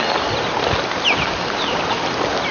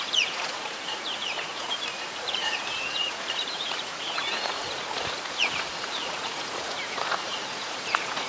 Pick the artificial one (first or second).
second